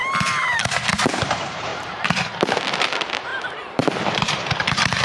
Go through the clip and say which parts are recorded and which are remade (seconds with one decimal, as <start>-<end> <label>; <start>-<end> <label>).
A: 0.0-0.6 recorded; 0.6-1.7 remade; 1.7-2.8 recorded; 2.8-5.0 remade